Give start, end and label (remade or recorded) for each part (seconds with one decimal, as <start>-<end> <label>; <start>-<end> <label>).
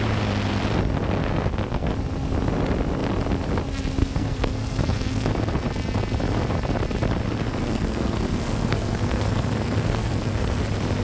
0.0-1.2 recorded; 1.2-1.9 remade; 1.9-4.0 recorded; 4.0-5.3 remade; 5.3-7.5 recorded; 7.5-10.6 remade; 10.6-11.0 recorded